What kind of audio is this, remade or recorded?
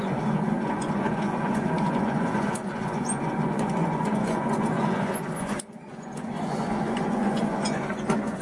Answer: remade